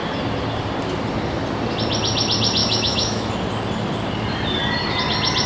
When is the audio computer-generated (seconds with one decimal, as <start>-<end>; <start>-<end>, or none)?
2.6-3.3